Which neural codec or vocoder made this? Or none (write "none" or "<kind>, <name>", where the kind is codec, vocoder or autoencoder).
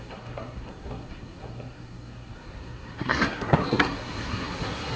codec, SNAC